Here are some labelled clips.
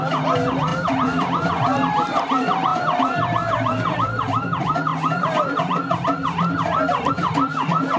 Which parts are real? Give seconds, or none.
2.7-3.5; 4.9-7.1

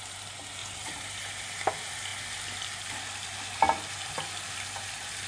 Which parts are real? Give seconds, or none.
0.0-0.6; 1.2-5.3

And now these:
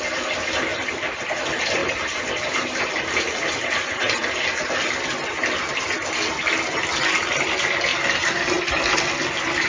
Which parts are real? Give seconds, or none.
0.0-0.7; 1.2-1.8; 4.4-7.9; 8.7-9.7